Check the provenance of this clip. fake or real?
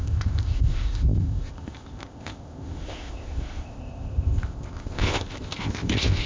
fake